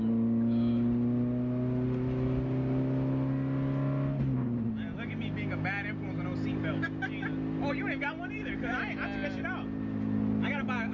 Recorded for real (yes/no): yes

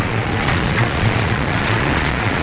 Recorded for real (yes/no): no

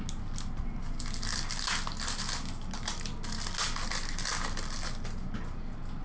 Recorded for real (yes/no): yes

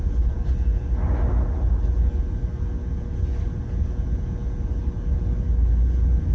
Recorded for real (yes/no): yes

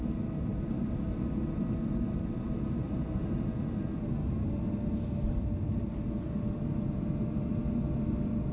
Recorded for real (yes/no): yes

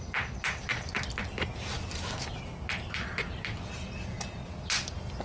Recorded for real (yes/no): yes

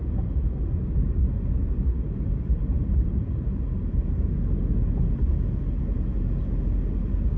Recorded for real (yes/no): yes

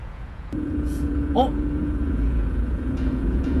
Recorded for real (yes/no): no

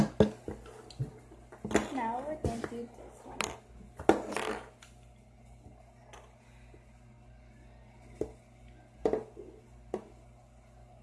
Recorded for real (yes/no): yes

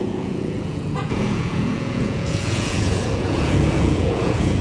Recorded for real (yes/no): no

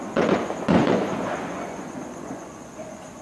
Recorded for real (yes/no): no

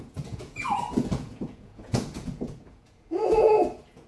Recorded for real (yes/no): no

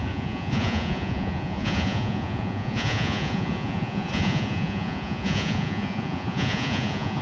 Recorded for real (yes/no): no